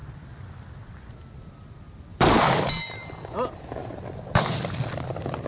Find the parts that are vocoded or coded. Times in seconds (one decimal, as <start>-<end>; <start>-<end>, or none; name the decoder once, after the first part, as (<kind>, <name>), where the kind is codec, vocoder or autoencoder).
2.1-3.1 (vocoder, BigVGAN v2); 3.8-4.4